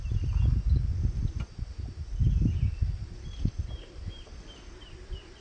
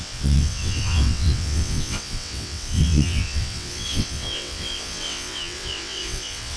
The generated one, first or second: second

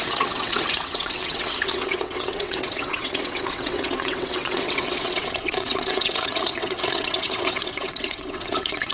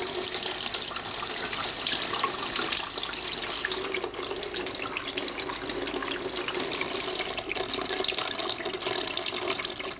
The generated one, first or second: first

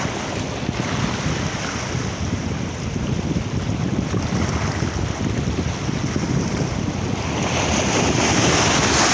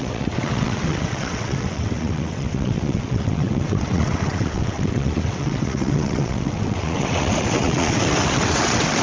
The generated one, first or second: second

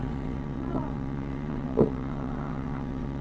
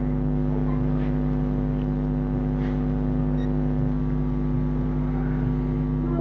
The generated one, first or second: first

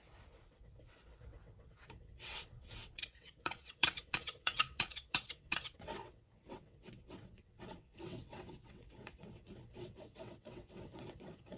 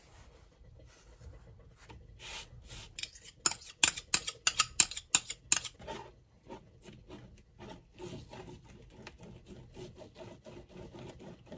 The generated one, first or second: first